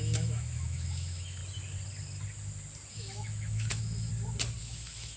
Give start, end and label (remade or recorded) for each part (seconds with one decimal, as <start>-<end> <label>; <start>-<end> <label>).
0.0-1.4 remade; 1.4-2.9 recorded; 2.9-4.1 remade; 4.1-4.6 recorded; 4.6-5.2 remade